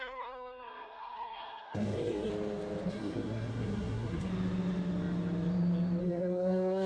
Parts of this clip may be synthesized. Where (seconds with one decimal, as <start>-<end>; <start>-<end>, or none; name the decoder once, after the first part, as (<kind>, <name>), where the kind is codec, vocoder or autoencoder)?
0.0-2.3 (codec, SNAC); 2.9-4.3; 6.0-6.9